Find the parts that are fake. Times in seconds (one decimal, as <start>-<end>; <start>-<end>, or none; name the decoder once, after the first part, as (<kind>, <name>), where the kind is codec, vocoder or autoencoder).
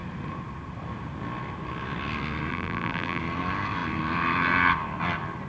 2.5-3.2 (vocoder, BigVGAN v2)